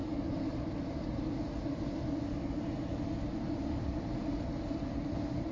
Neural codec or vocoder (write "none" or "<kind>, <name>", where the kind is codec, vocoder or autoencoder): none